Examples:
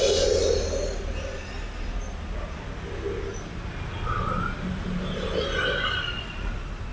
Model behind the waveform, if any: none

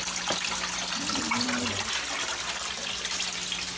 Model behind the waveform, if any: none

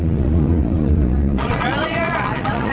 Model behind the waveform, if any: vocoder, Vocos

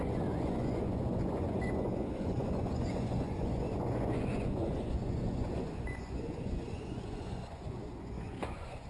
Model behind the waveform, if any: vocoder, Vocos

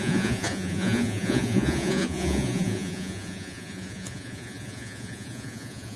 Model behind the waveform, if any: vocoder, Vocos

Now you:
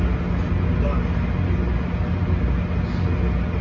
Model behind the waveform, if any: none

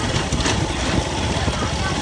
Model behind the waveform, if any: none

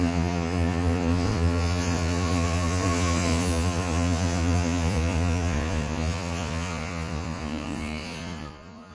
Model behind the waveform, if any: vocoder, Vocos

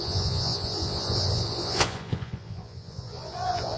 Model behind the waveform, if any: vocoder, Vocos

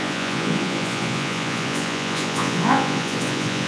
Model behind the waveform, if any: vocoder, Vocos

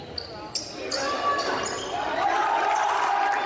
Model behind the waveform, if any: none